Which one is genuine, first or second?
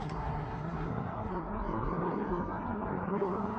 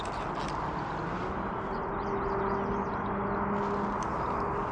second